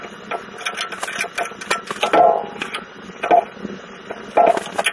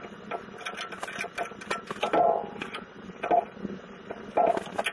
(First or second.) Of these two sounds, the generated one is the second